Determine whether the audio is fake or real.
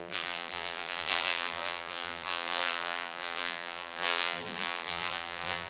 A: fake